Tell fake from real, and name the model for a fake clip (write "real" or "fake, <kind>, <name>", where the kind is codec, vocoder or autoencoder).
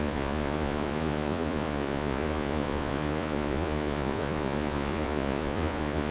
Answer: fake, vocoder, Vocos